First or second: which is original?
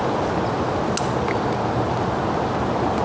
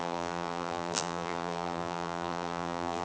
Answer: first